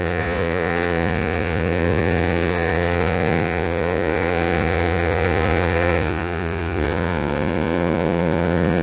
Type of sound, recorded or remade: remade